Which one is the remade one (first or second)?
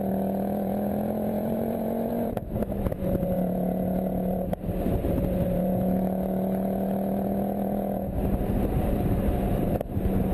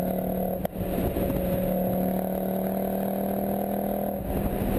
first